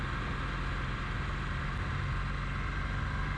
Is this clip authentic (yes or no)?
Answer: yes